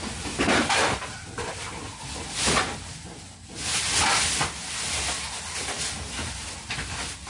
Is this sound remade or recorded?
recorded